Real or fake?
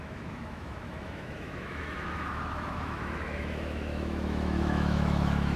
fake